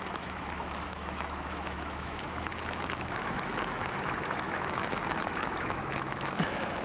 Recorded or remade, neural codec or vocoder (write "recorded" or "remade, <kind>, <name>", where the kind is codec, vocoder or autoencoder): remade, autoencoder, DAC-VAE